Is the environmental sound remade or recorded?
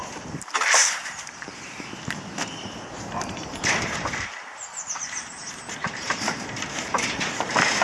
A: remade